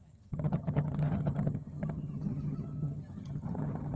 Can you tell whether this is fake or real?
fake